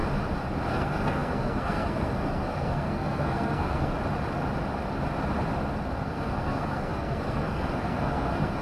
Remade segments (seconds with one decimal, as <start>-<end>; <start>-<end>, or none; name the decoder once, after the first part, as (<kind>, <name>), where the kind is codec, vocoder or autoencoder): 0.7-3.9 (codec, SNAC); 6.0-8.6